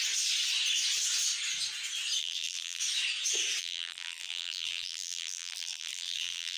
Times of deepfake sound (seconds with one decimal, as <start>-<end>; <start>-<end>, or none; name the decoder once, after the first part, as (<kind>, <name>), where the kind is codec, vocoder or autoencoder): 2.2-2.8 (vocoder, BigVGAN v2); 3.6-6.6